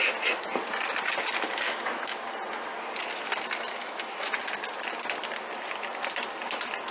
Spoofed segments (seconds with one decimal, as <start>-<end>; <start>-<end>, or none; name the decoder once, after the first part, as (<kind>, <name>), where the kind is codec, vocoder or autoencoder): 3.7-4.3 (autoencoder, DAC-VAE)